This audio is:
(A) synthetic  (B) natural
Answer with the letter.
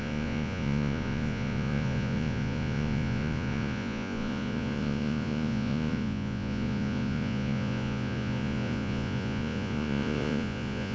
A